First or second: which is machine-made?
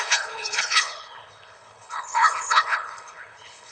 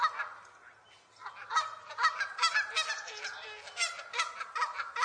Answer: first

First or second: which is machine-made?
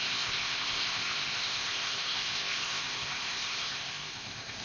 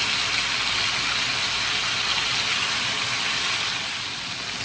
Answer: first